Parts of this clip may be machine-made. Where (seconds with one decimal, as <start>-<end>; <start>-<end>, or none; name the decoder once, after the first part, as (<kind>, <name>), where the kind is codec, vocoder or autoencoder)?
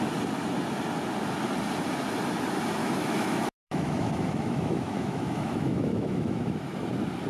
2.8-6.7 (autoencoder, DAC-VAE)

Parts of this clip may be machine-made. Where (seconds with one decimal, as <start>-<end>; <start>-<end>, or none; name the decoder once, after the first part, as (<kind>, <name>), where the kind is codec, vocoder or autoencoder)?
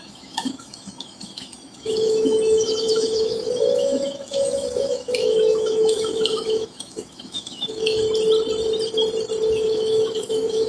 0.0-8.0 (autoencoder, DAC-VAE); 9.5-10.7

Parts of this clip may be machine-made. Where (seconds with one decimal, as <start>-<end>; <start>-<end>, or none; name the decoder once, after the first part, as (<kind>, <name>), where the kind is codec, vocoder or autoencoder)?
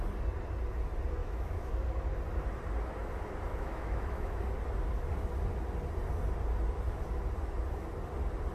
1.2-1.7 (autoencoder, DAC-VAE); 3.5-4.4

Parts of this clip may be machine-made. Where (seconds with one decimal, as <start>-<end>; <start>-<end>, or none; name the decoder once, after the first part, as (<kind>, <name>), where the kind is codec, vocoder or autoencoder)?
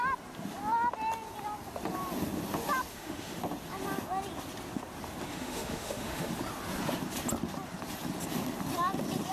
2.9-3.4 (autoencoder, DAC-VAE); 5.3-6.3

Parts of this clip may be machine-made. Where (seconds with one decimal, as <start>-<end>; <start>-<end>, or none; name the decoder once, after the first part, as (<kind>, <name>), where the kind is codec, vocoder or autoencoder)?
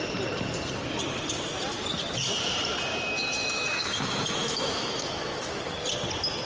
2.9-5.6 (autoencoder, DAC-VAE)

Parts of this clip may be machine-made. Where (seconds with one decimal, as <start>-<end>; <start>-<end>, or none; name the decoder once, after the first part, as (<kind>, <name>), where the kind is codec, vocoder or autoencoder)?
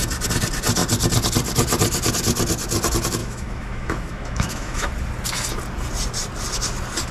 3.2-4.9 (autoencoder, DAC-VAE)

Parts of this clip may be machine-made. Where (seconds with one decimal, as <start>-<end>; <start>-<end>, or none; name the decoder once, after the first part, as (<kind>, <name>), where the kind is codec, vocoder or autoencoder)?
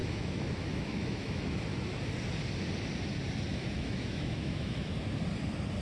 0.0-1.6 (autoencoder, DAC-VAE); 3.5-4.9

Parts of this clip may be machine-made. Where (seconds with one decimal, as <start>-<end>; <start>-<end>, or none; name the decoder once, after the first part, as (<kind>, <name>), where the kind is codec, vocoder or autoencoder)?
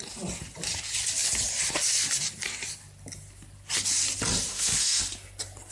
4.5-5.0 (autoencoder, DAC-VAE)